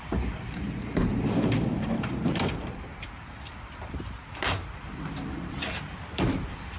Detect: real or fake fake